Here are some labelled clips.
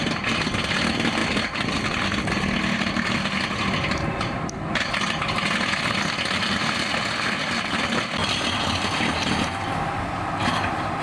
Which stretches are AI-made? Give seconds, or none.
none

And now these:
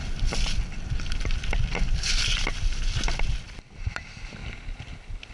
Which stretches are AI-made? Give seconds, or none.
0.0-4.4 (vocoder, BigVGAN v2)

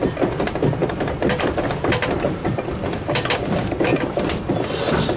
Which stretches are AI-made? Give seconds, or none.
0.8-2.4 (vocoder, BigVGAN v2)

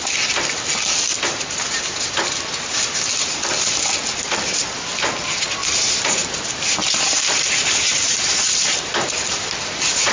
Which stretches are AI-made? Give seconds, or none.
1.1-2.8 (vocoder, BigVGAN v2); 5.6-9.1

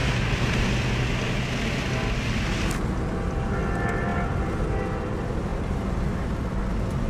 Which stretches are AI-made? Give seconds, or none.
5.5-6.6 (vocoder, BigVGAN v2)